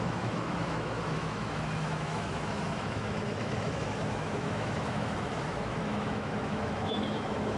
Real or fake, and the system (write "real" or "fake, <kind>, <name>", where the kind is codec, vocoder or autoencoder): fake, autoencoder, DAC-VAE